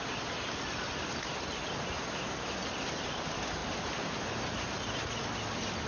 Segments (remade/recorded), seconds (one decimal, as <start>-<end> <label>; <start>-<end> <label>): 0.0-5.9 recorded